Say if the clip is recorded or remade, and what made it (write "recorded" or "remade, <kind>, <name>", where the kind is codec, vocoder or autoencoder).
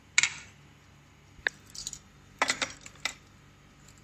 recorded